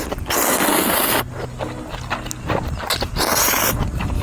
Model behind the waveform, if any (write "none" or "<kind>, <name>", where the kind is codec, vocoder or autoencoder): none